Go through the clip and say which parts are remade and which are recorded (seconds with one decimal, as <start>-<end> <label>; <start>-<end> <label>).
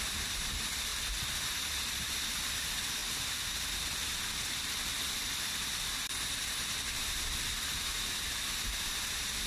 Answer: 0.0-0.9 remade; 0.9-2.3 recorded; 2.3-9.5 remade